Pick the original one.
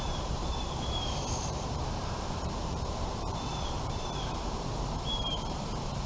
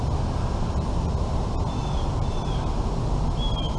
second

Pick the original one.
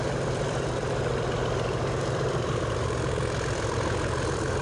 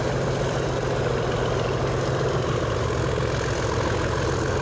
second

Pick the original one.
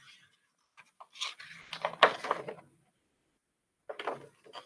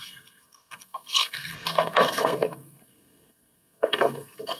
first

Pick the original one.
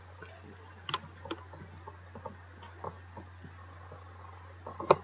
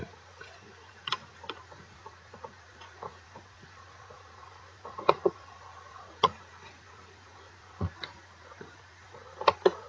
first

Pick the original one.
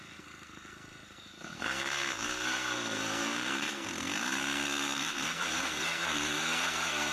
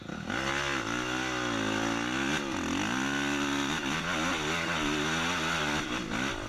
second